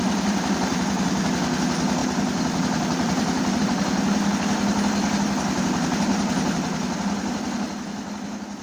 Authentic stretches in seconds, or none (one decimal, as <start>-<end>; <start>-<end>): 0.0-2.0; 3.6-8.6